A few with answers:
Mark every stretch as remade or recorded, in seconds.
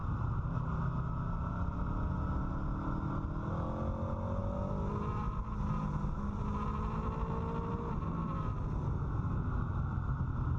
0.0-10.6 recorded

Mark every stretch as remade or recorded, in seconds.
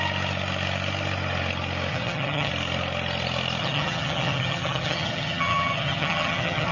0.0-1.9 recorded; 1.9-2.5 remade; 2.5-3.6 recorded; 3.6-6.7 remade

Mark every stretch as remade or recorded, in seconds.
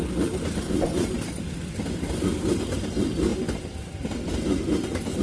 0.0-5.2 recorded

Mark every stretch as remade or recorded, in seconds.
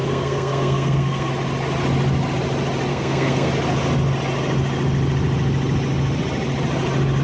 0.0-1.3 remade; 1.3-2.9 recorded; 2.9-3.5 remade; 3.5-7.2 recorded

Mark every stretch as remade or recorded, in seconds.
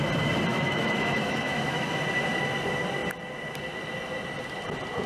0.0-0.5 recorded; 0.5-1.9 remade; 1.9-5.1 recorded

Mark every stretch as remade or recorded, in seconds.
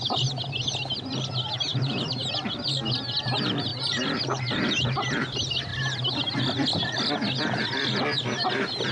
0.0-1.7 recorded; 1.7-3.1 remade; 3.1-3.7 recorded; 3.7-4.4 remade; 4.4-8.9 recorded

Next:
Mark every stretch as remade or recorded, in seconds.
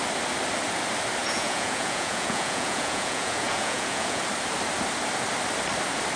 0.0-1.2 recorded; 1.2-4.2 remade; 4.2-6.2 recorded